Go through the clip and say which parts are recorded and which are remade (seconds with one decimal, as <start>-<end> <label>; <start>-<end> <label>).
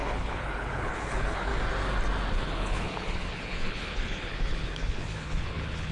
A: 0.0-1.5 remade; 1.5-2.3 recorded; 2.3-5.9 remade